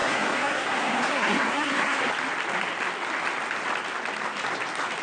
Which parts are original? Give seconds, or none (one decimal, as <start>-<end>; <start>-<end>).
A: 2.0-5.0